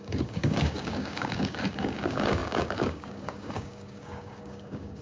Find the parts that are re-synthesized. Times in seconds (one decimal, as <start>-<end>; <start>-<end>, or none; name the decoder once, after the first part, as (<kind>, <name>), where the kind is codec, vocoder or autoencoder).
0.0-5.0 (codec, DAC)